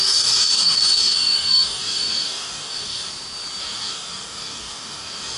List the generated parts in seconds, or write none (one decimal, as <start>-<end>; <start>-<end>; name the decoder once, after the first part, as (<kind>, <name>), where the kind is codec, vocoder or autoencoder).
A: 0.0-3.1 (codec, DAC); 3.6-5.4

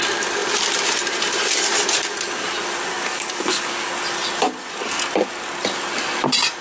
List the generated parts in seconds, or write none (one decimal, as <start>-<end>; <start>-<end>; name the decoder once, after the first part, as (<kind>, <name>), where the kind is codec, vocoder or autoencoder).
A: 2.9-3.9 (codec, DAC)

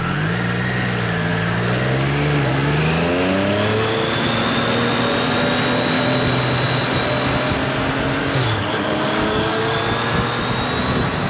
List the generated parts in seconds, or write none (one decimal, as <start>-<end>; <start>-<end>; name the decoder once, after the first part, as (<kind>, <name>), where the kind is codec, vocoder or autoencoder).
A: 8.2-9.8 (codec, DAC)

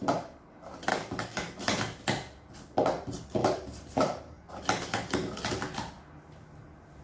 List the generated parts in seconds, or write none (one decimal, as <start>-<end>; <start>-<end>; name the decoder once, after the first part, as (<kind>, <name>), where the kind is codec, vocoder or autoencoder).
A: 0.9-1.6 (codec, DAC); 3.4-4.5